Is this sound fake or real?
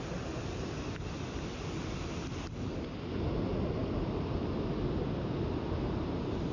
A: real